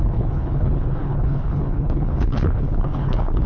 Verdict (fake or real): fake